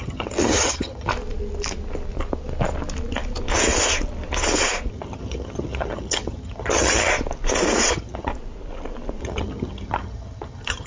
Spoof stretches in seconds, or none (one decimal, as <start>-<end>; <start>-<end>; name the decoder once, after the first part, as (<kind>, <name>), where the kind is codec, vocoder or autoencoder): 0.0-1.1 (vocoder, HiFi-GAN); 4.9-7.1; 7.9-8.3; 9.2-10.9